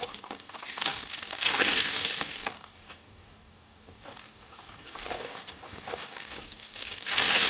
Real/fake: fake